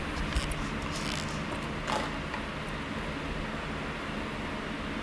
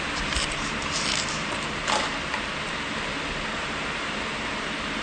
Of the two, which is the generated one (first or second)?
second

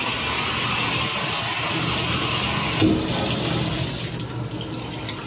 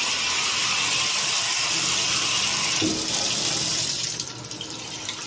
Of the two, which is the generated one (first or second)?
second